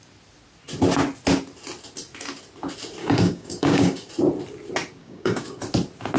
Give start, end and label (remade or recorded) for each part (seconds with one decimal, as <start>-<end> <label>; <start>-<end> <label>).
0.0-3.0 recorded; 3.0-4.1 remade; 4.1-5.0 recorded; 5.0-5.6 remade; 5.6-6.2 recorded